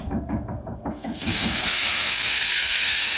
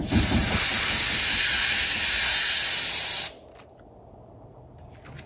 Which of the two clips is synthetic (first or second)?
first